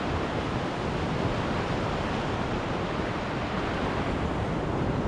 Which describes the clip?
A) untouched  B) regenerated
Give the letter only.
A